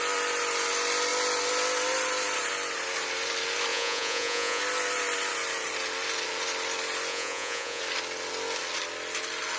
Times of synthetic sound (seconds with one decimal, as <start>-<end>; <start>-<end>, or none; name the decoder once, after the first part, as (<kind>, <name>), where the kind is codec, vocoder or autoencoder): 3.7-4.6 (vocoder, Vocos); 7.1-7.8

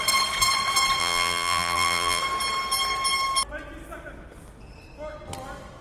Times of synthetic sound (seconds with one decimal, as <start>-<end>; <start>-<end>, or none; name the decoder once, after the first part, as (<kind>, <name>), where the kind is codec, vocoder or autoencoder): 1.0-2.2 (vocoder, BigVGAN v2)